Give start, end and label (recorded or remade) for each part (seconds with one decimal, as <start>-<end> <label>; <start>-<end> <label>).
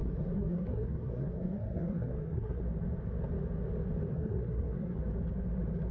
0.0-2.6 remade; 2.6-4.1 recorded; 4.1-5.0 remade; 5.0-5.9 recorded